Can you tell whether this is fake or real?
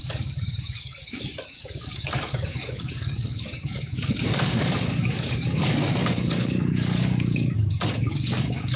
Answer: fake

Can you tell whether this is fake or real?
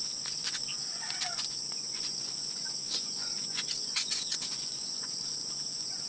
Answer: fake